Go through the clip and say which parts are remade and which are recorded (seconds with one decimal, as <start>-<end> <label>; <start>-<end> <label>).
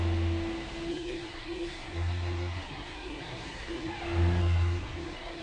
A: 0.0-0.9 recorded; 0.9-3.9 remade; 3.9-4.4 recorded; 4.4-5.4 remade